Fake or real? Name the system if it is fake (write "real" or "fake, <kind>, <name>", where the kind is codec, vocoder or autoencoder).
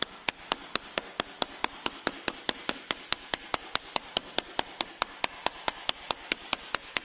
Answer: real